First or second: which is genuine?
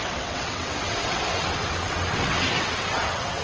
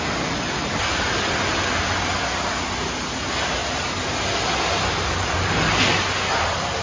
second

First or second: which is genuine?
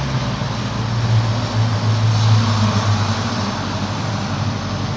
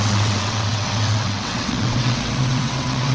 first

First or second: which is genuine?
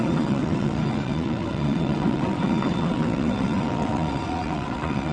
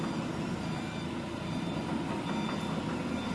second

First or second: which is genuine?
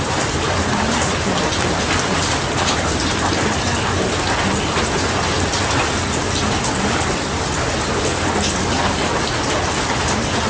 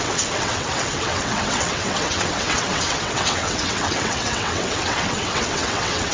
first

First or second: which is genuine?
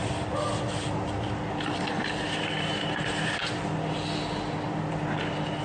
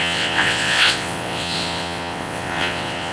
first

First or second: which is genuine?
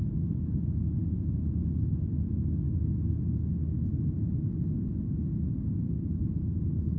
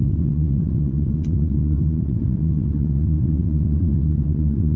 first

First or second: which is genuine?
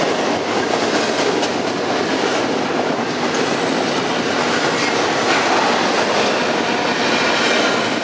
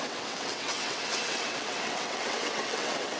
first